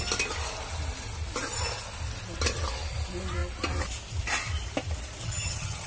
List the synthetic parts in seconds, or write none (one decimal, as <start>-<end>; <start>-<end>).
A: 5.2-5.9